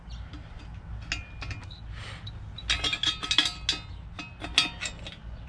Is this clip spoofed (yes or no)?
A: no